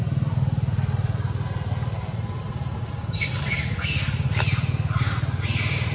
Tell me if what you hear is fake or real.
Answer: real